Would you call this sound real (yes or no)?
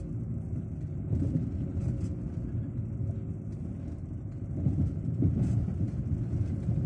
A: yes